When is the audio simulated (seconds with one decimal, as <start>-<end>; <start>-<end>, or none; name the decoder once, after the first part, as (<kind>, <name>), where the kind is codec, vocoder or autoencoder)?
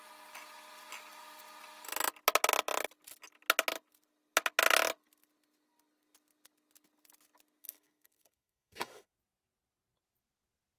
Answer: 7.6-9.1 (codec, SNAC)